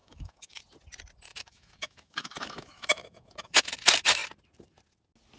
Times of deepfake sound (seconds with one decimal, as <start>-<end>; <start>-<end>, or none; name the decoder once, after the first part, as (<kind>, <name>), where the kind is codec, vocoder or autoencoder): 0.0-0.6 (autoencoder, DAC-VAE); 1.3-3.7